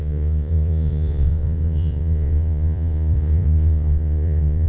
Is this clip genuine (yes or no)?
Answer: no